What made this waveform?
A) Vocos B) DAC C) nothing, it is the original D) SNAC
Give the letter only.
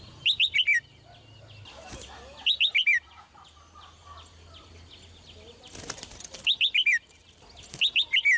C